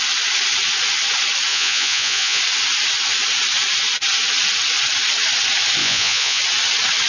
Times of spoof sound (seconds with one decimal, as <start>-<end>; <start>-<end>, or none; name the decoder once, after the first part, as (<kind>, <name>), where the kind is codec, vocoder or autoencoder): 1.5-2.4 (vocoder, Vocos); 5.8-6.4